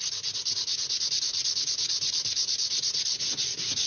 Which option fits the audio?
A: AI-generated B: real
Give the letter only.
B